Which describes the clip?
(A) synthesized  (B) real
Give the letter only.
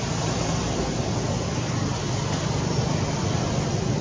B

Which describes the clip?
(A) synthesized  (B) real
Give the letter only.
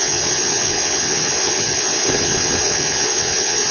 A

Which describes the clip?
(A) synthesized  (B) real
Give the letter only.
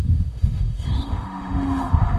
A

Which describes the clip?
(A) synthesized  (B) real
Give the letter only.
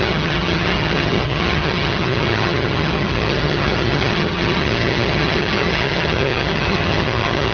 A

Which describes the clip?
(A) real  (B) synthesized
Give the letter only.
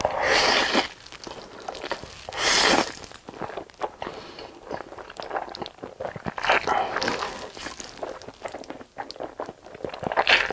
A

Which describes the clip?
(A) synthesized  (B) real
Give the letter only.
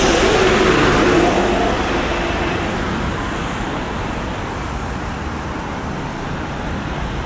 B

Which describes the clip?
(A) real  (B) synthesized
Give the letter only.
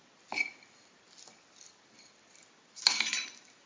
A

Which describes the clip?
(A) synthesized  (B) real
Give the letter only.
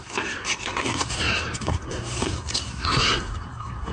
A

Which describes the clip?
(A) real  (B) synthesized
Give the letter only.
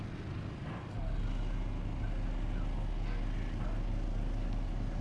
A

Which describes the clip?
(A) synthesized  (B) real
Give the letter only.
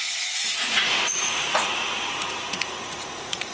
A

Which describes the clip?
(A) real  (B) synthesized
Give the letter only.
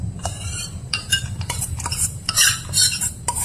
B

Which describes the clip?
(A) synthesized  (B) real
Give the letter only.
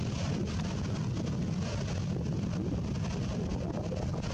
B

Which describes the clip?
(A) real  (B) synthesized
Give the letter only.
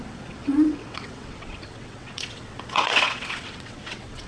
B